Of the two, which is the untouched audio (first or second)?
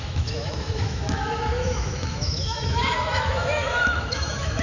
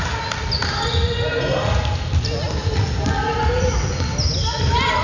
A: second